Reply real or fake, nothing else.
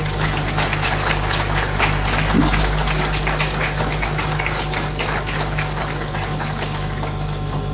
fake